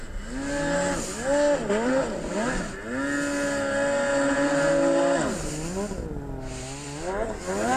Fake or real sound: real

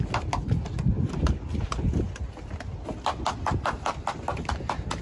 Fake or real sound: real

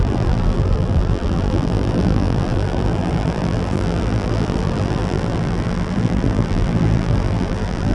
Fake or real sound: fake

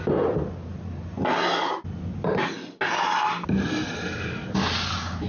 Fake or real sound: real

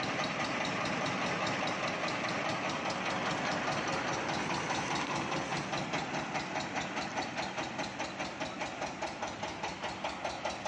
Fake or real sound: real